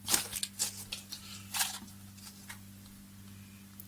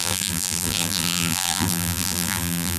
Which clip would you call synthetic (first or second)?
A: second